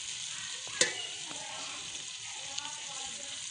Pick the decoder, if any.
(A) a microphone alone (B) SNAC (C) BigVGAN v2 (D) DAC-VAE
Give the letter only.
A